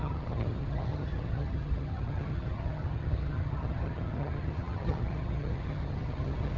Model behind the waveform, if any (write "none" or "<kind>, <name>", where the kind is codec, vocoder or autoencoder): vocoder, HiFi-GAN